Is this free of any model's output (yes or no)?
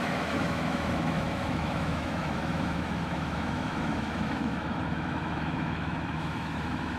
no